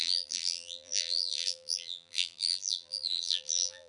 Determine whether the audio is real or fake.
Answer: fake